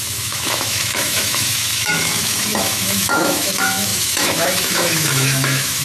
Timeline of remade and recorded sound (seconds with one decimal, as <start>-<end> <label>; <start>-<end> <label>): 0.0-5.8 remade